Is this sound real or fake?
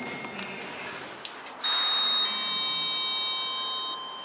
real